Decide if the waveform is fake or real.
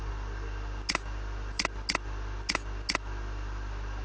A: real